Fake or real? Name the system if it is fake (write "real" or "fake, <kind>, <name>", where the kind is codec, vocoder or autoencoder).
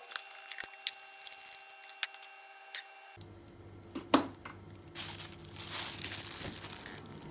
real